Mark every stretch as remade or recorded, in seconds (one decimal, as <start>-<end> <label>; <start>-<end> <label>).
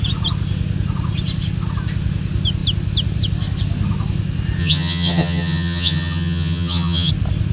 0.0-4.6 recorded; 4.6-7.1 remade; 7.1-7.5 recorded